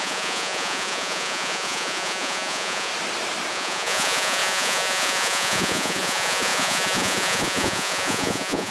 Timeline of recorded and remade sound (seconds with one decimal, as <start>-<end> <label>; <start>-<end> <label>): 0.0-2.9 remade; 2.9-3.5 recorded; 3.5-8.7 remade